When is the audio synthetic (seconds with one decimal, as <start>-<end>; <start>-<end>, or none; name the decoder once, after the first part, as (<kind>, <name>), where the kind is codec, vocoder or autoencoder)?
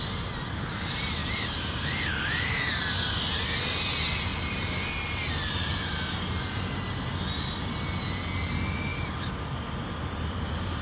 1.2-3.1 (vocoder, BigVGAN v2); 4.3-8.3; 8.9-9.5